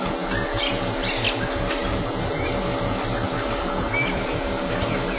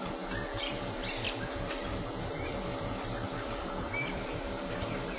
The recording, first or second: first